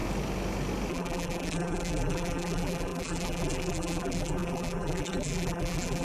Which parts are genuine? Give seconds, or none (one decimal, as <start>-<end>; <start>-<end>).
0.0-0.9